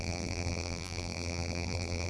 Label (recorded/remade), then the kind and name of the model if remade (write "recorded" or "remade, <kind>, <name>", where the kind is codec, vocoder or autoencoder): remade, vocoder, BigVGAN v2